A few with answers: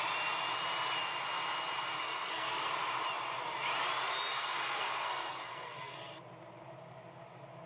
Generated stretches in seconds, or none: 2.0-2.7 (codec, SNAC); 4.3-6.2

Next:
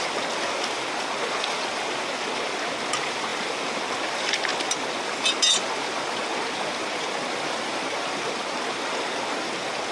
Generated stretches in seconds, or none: none

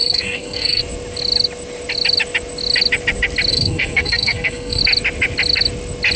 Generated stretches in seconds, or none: 0.0-0.8 (codec, SNAC); 3.5-4.8